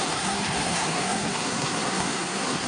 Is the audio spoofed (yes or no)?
yes